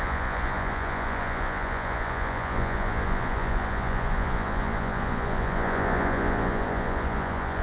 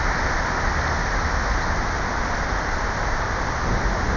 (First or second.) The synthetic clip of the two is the first